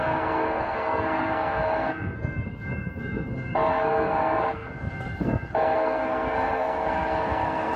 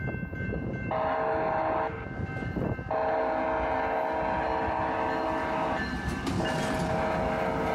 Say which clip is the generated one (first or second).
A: first